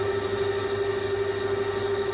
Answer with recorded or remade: recorded